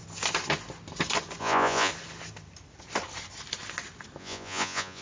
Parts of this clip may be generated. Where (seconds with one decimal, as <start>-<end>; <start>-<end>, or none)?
1.4-1.9; 4.2-5.0